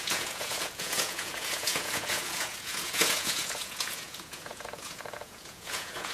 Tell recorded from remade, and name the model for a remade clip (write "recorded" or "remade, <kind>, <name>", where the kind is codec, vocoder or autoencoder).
remade, vocoder, Vocos